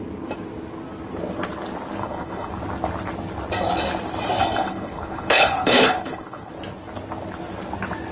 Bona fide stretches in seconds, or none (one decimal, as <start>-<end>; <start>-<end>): 0.0-2.0; 2.5-4.6; 6.5-8.1